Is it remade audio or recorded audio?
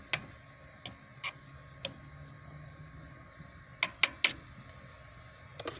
recorded